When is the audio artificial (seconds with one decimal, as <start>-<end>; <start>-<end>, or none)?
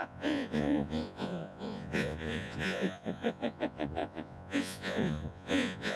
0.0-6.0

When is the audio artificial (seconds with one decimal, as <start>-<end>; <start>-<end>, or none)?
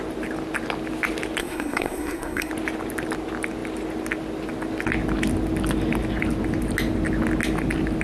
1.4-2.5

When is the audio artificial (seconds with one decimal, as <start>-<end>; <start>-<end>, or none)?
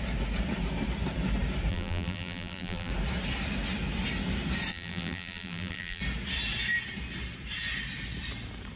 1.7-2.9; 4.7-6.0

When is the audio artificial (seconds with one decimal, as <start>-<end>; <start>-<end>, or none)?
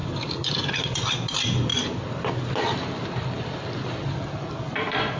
none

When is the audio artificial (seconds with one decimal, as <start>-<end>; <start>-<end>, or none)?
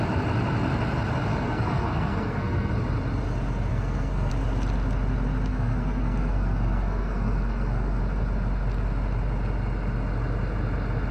1.3-2.7; 3.7-4.3; 5.5-8.0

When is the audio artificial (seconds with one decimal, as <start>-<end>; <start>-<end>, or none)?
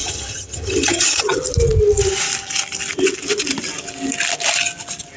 0.0-1.2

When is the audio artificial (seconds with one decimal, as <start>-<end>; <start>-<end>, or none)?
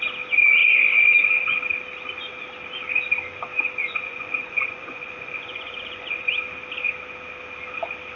3.8-6.3